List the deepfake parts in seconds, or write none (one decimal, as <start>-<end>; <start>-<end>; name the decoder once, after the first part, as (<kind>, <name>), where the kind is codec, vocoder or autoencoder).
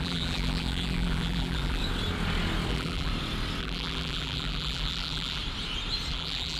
0.0-1.8 (vocoder, BigVGAN v2); 2.7-3.1; 3.6-5.4; 6.1-6.6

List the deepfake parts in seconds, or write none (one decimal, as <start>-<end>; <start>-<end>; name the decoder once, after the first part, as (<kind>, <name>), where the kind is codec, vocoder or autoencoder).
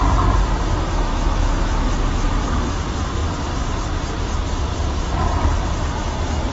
1.1-1.9 (autoencoder, DAC-VAE)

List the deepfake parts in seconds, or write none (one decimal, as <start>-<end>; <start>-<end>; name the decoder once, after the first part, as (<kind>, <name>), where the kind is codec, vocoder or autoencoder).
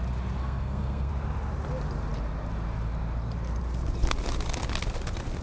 0.4-1.1 (codec, SNAC)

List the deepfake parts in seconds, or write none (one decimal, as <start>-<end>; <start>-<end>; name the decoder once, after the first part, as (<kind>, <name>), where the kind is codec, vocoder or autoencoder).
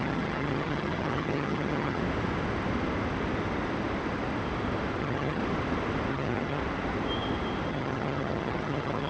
0.0-2.0 (vocoder, HiFi-GAN); 5.0-5.4; 6.1-6.6; 7.7-9.1